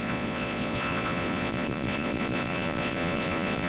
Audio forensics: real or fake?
fake